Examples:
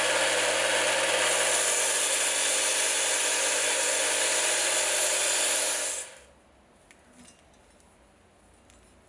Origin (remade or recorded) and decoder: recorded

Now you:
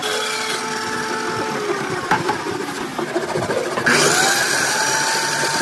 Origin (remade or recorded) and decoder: recorded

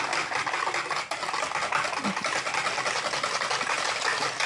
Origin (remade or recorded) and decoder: recorded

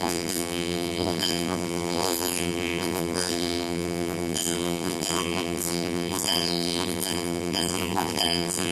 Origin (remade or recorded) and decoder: remade, vocoder, BigVGAN v2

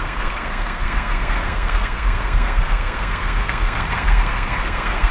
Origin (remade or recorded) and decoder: remade, codec, SNAC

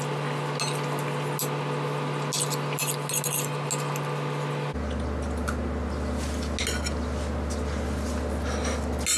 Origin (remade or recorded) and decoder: recorded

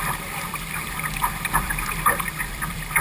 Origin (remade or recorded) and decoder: remade, vocoder, BigVGAN v2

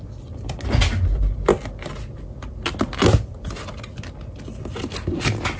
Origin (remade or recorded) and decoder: recorded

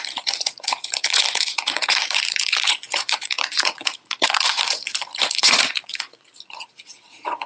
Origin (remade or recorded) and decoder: remade, vocoder, Vocos